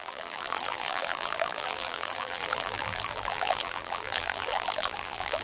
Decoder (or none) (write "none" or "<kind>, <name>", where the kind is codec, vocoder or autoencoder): vocoder, BigVGAN v2